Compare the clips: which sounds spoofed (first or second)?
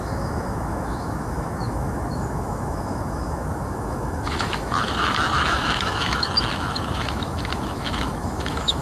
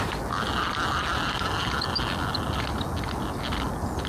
first